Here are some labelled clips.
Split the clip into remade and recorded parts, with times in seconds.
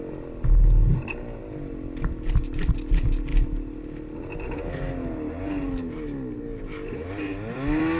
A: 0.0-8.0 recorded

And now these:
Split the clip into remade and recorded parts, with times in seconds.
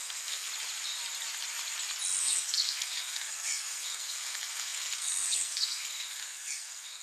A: 0.0-0.5 remade; 0.5-2.2 recorded; 2.2-7.0 remade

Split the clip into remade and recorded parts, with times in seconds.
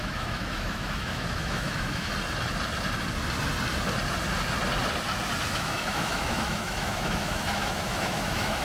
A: 0.0-2.1 remade; 2.1-5.5 recorded; 5.5-8.6 remade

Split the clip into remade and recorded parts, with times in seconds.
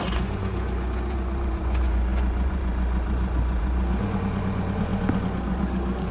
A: 0.0-6.1 remade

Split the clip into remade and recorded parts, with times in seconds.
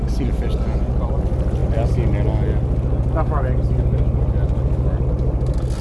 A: 0.0-5.8 recorded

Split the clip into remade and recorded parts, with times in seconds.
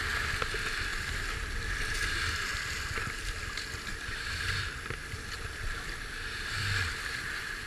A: 0.0-7.7 recorded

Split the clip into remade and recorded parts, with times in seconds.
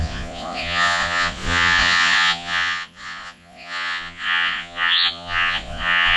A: 0.0-6.2 remade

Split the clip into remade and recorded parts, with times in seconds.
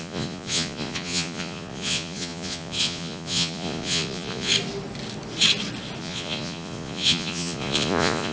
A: 0.0-4.5 remade; 4.5-6.0 recorded; 6.0-8.3 remade